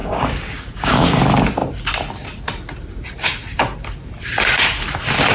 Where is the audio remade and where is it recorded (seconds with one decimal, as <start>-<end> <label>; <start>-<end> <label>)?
0.0-1.2 remade; 1.2-5.3 recorded